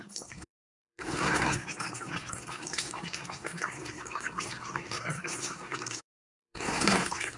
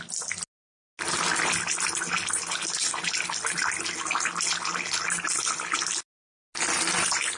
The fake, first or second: first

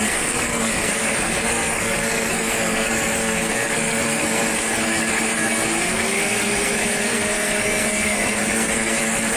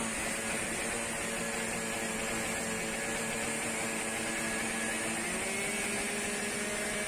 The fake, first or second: first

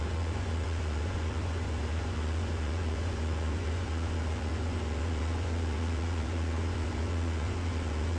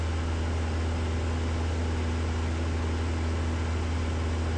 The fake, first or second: first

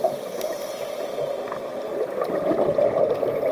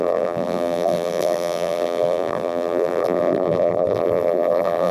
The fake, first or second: second